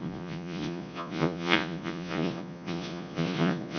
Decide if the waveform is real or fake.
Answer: fake